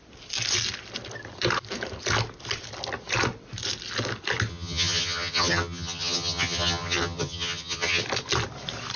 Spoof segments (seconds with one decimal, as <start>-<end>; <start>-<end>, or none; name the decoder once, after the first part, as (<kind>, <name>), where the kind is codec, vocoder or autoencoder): 4.5-8.0 (vocoder, HiFi-GAN)